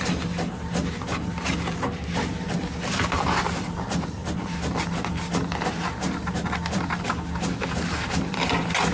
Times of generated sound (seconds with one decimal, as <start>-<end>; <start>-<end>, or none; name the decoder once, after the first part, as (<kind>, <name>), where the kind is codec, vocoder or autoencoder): none